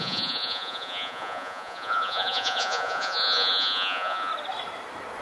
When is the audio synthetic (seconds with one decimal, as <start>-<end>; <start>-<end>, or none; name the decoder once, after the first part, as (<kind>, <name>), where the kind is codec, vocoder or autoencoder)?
0.0-4.3 (vocoder, Vocos)